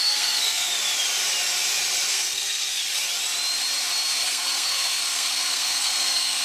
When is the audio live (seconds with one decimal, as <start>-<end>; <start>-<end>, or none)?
0.7-2.1; 2.8-4.1